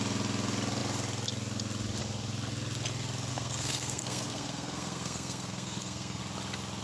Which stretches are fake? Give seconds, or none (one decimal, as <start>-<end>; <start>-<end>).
3.3-6.2